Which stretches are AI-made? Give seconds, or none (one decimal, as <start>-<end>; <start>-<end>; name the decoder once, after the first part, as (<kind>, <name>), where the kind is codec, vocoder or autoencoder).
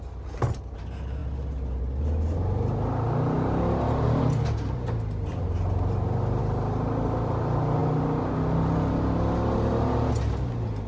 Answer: none